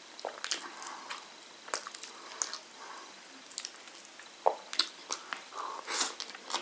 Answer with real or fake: real